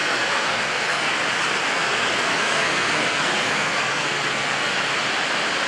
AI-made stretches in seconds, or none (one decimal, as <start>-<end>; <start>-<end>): 0.0-1.1; 1.7-4.7